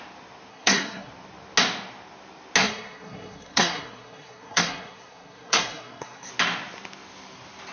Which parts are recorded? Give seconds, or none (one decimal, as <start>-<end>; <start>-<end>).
0.0-0.5; 1.1-2.6; 6.3-7.7